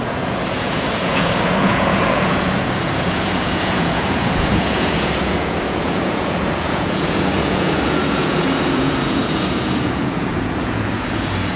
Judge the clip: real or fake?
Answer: fake